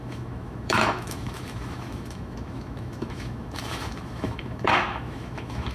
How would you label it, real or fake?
fake